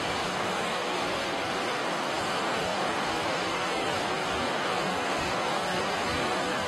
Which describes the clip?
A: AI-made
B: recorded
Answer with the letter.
A